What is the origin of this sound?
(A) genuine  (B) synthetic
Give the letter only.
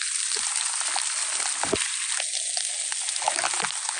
A